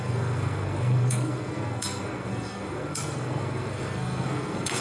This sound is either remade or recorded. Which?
remade